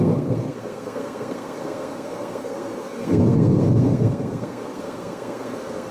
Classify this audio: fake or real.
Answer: fake